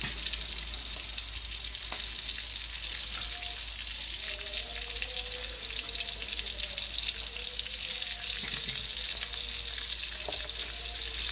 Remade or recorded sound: recorded